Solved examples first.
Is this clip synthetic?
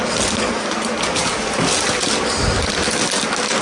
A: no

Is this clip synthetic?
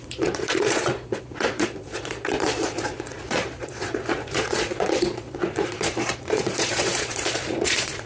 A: yes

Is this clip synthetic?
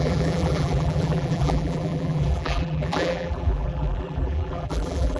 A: yes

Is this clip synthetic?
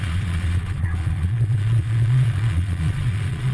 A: yes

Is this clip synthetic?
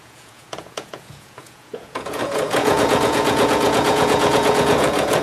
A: yes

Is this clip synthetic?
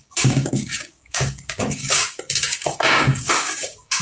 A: yes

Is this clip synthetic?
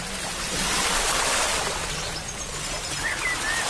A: no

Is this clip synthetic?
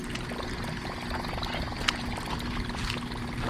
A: no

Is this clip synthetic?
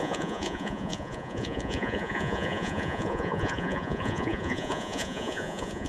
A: yes